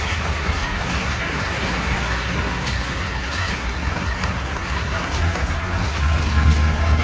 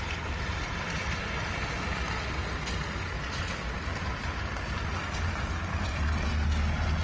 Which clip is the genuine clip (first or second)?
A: second